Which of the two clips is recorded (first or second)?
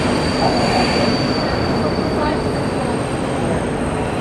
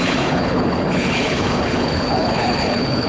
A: first